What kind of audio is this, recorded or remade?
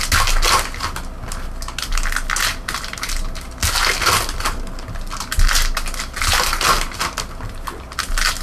recorded